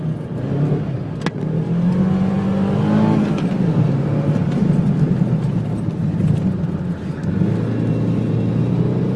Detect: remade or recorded recorded